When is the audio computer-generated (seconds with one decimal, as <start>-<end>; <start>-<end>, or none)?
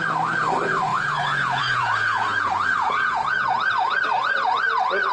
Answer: 0.9-3.7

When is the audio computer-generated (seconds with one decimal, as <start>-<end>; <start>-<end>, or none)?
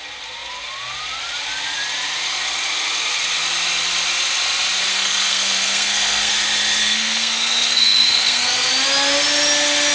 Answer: 4.9-6.3; 6.8-8.7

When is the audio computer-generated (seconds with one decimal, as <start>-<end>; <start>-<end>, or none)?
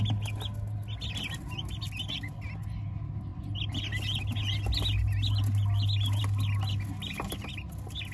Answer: none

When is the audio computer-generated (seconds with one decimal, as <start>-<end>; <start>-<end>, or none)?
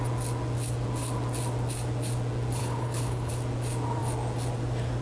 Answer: 2.6-3.3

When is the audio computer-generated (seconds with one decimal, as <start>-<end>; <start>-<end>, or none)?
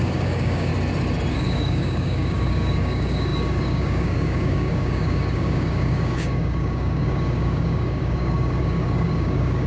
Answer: 0.0-0.7; 1.3-9.7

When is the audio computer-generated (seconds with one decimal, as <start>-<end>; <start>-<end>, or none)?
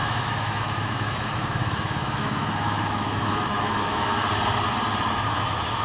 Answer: 0.0-4.2; 5.1-5.8